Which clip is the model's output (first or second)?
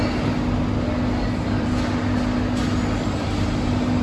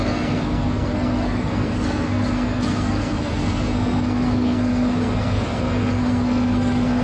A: second